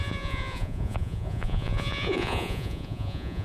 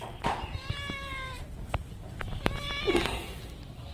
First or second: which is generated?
first